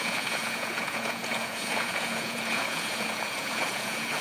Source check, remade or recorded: remade